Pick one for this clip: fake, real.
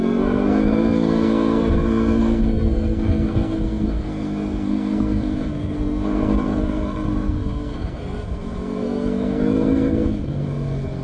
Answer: fake